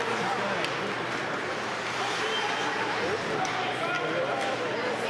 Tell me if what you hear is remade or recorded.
recorded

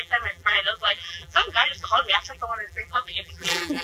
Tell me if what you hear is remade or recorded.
remade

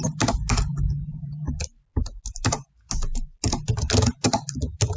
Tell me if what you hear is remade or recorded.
recorded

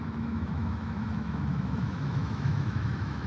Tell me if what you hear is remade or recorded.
remade